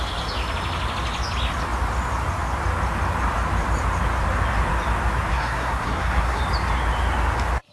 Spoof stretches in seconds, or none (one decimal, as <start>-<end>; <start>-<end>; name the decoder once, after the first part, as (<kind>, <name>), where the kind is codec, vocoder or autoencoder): 5.3-6.4 (codec, SNAC)